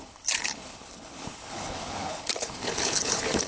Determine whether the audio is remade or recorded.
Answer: remade